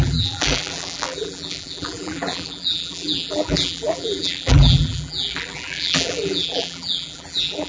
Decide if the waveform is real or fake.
fake